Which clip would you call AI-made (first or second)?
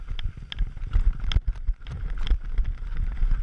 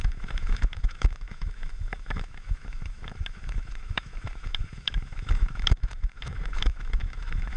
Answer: second